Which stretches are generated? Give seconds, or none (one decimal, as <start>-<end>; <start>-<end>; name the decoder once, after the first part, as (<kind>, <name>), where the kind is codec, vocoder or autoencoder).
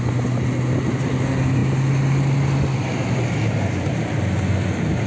none